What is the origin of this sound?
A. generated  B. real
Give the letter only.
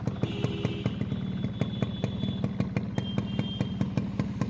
B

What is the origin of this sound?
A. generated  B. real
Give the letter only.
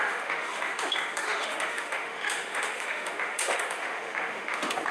A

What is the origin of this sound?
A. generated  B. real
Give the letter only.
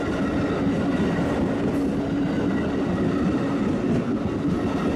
B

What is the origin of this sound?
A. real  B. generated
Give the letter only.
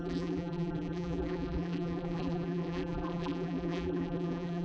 B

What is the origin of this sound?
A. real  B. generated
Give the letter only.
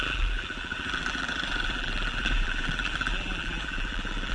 B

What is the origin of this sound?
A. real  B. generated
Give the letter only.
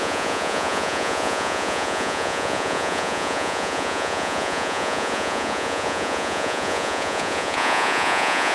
B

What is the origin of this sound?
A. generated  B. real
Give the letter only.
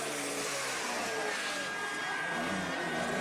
B